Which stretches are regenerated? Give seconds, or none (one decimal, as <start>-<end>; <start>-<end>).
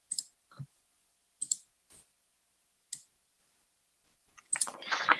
0.7-1.1; 4.2-5.2